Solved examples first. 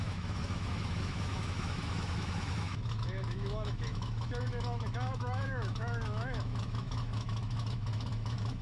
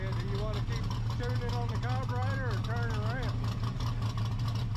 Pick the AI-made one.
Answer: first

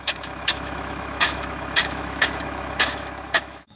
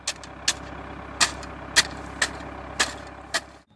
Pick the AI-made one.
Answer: first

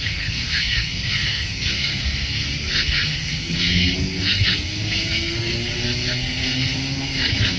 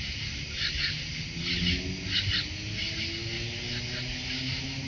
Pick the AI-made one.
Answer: first